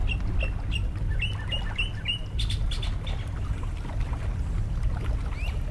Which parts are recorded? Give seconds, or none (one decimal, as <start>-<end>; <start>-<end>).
0.0-5.7